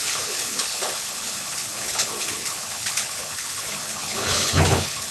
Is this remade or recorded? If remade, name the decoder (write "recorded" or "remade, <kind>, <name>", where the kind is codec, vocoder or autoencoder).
remade, codec, HILCodec